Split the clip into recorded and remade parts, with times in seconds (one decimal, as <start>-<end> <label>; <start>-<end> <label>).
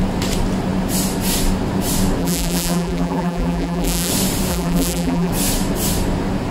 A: 0.0-2.2 recorded; 2.2-4.1 remade; 4.1-4.5 recorded; 4.5-5.3 remade; 5.3-6.5 recorded